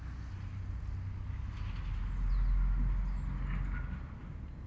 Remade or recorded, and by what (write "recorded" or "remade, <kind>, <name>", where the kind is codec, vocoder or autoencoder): recorded